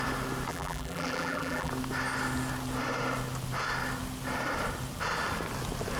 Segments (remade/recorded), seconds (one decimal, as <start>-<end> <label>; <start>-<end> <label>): 0.0-0.5 recorded; 0.5-1.7 remade; 1.7-6.0 recorded